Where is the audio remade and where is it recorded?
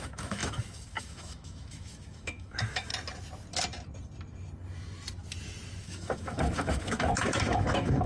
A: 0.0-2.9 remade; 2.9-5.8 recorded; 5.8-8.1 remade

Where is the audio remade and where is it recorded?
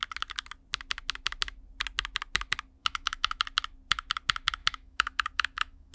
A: 0.0-2.8 recorded; 2.8-3.4 remade; 3.4-4.6 recorded; 4.6-5.9 remade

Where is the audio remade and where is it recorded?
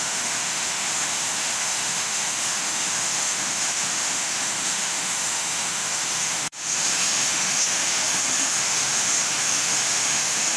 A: 0.0-10.6 remade